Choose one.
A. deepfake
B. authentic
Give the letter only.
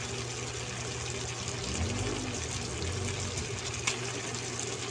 B